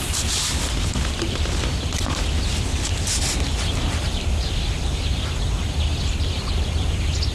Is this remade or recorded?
recorded